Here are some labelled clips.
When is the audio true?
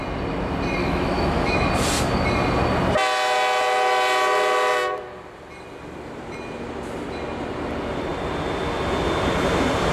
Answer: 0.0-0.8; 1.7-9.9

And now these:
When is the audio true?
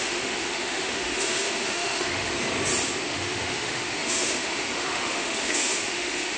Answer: 2.3-3.1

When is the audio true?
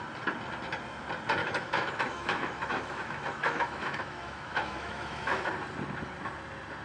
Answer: 0.0-1.4; 5.5-6.8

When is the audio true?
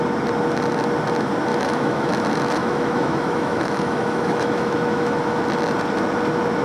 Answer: 0.0-1.5; 2.1-2.6; 5.4-6.6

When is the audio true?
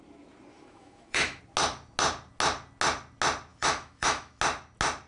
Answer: 0.0-0.5; 1.4-3.5; 4.4-5.1